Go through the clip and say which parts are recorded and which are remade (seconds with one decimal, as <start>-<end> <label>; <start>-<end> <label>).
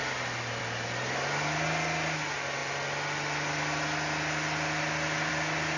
0.0-5.8 recorded